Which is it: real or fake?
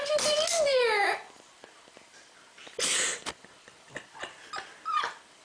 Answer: real